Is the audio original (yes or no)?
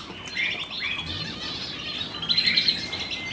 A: yes